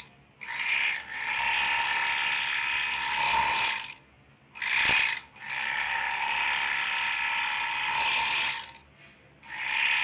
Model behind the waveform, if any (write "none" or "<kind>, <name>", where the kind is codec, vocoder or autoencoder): none